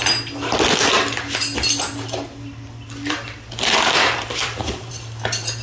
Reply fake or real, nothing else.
fake